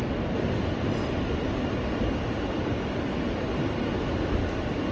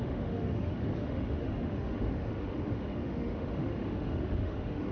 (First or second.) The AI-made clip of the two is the second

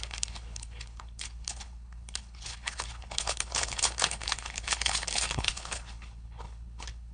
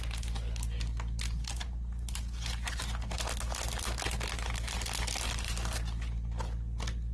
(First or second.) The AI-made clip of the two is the first